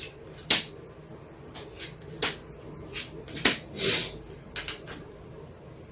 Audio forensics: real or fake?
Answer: real